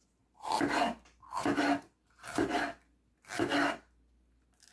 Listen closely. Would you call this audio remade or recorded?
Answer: recorded